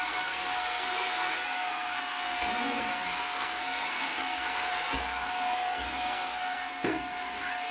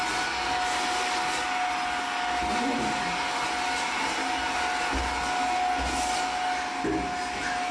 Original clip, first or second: second